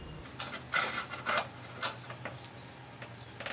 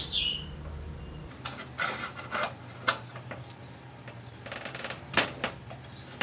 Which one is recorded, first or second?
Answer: first